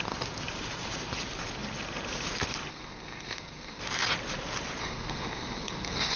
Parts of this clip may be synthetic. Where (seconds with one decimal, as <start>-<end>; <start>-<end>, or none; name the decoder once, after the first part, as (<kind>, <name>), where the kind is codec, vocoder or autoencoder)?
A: 2.7-3.8 (codec, SNAC); 4.8-6.2